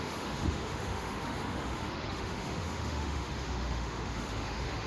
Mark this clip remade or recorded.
remade